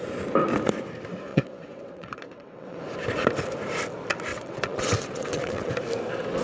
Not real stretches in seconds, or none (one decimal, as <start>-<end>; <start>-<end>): 1.3-2.8; 4.3-5.7